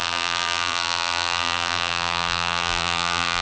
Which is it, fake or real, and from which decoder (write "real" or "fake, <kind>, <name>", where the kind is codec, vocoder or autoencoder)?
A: fake, vocoder, BigVGAN v2